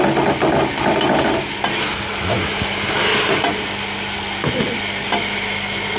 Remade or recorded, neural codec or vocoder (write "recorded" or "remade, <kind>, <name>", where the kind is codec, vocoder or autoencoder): recorded